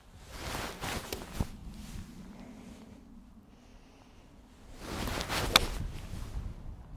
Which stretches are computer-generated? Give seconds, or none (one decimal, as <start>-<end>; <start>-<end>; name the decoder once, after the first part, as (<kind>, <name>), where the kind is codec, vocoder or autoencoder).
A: none